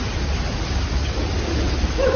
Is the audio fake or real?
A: real